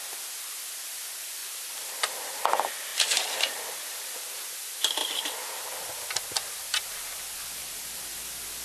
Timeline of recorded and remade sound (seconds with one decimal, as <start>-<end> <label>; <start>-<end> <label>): 0.0-1.4 recorded; 1.4-2.4 remade; 2.4-2.9 recorded; 2.9-4.2 remade; 4.2-5.0 recorded; 5.0-5.7 remade; 5.7-7.6 recorded; 7.6-8.2 remade; 8.2-8.6 recorded